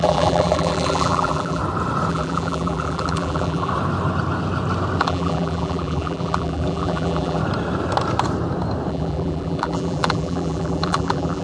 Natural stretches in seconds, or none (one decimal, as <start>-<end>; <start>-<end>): 1.6-2.1; 3.7-5.0; 7.4-8.9